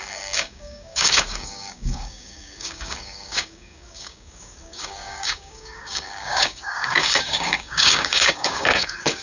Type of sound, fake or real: fake